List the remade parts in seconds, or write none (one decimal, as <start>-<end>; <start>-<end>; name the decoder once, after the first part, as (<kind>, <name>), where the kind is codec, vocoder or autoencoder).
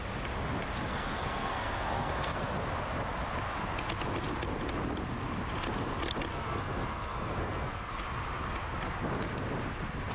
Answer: 0.9-2.5 (codec, SNAC); 6.3-7.9